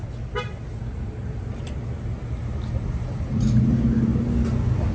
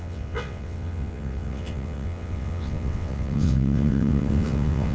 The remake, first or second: second